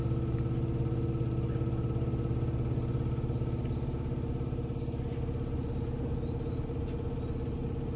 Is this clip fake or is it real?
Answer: real